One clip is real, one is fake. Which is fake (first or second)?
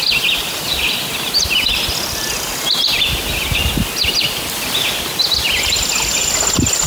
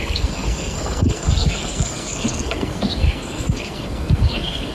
second